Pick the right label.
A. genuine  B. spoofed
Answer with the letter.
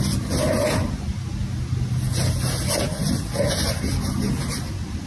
A